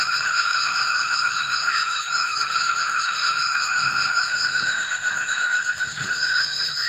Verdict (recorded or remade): remade